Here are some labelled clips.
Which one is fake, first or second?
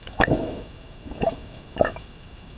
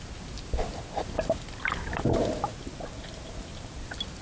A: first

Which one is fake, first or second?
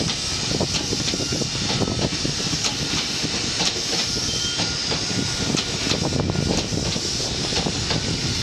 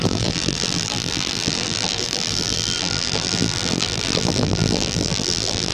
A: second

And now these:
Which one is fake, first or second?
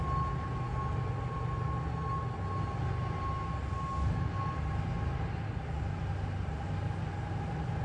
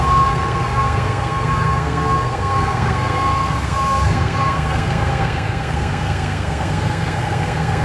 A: second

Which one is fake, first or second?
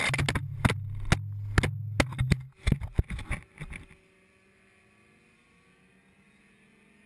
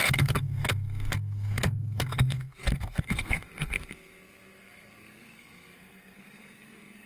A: second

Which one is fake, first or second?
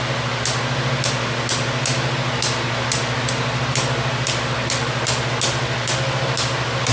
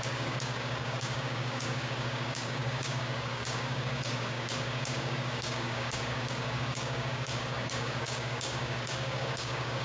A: second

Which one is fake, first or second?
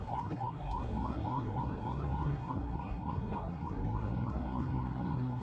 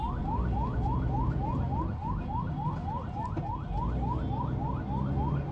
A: first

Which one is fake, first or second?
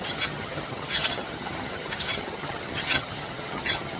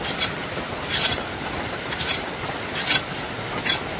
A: first